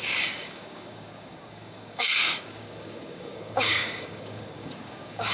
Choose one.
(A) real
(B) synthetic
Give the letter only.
B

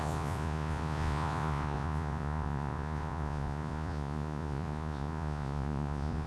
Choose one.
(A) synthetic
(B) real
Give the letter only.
A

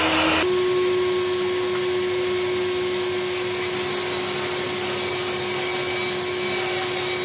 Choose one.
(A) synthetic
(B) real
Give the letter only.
B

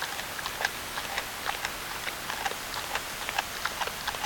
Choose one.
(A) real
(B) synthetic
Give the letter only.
A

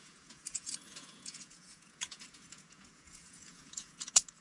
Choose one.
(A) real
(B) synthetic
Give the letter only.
B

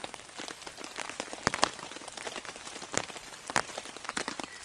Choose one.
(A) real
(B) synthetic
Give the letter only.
A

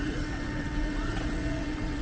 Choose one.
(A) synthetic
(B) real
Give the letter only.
A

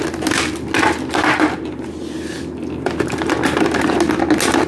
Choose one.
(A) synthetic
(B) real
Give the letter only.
B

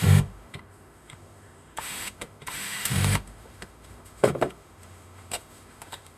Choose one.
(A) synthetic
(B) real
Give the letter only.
A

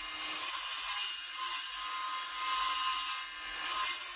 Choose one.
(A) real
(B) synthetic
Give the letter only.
A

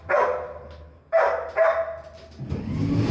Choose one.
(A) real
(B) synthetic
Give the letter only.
A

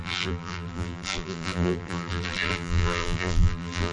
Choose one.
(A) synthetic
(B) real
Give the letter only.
A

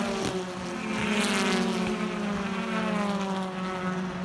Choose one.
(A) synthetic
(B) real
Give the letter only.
B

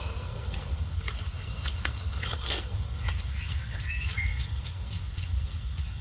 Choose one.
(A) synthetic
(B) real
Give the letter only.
A